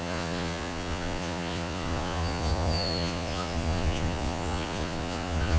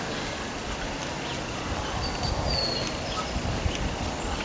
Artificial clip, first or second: first